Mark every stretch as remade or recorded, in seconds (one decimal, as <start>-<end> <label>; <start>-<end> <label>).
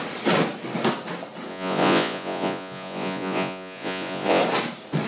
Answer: 0.0-1.5 recorded; 1.5-4.4 remade; 4.4-5.1 recorded